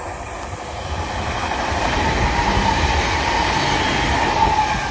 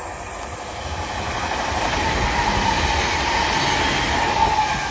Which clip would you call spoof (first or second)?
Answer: first